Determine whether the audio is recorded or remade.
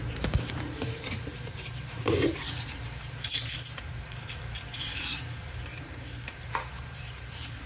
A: remade